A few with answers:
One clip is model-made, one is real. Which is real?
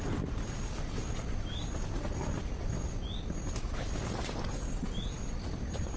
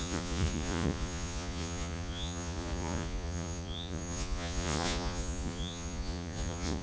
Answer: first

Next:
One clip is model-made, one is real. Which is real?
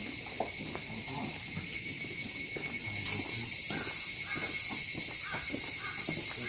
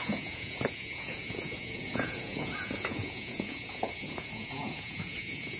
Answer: first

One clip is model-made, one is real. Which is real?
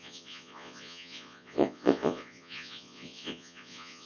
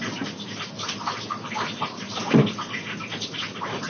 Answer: second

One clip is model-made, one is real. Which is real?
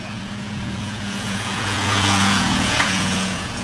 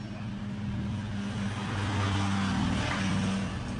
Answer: second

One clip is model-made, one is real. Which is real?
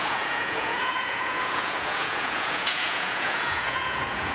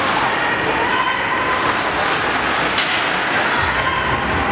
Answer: second